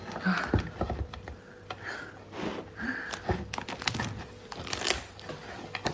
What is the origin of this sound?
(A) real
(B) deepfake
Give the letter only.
A